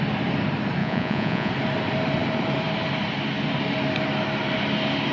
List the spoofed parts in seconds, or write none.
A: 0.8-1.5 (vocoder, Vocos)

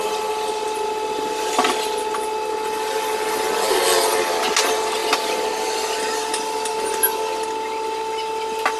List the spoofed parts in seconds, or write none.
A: none